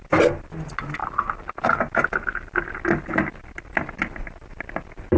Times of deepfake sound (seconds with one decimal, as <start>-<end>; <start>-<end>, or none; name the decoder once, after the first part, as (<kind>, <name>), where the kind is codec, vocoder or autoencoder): none